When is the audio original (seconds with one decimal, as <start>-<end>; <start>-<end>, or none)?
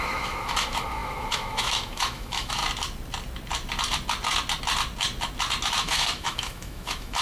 2.6-5.8